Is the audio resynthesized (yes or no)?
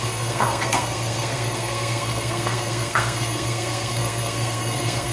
yes